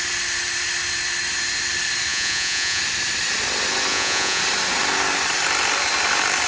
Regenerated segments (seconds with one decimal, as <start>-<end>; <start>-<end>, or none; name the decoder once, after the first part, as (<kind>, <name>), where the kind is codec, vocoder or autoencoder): 2.1-2.8 (vocoder, Vocos); 3.9-4.4